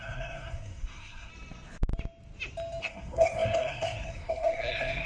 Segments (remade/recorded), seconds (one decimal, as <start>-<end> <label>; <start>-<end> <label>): 0.0-1.3 remade; 1.3-2.8 recorded; 2.8-5.1 remade